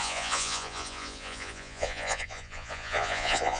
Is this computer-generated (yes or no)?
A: yes